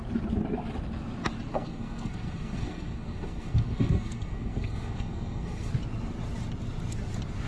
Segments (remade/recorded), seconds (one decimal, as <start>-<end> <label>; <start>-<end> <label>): 0.0-1.5 recorded; 1.5-5.7 remade; 5.7-7.5 recorded